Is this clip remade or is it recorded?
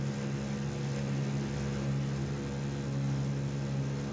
recorded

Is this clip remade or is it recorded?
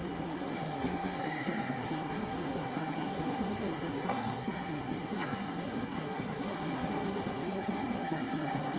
remade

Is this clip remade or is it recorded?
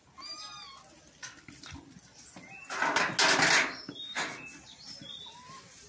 recorded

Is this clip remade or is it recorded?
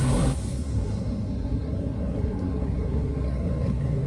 remade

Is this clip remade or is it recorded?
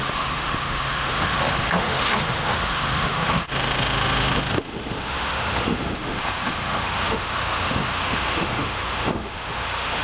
remade